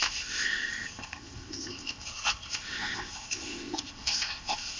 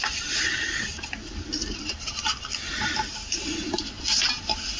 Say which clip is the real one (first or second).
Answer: second